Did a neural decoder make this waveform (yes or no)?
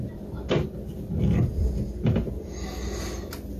no